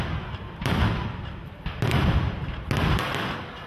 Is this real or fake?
real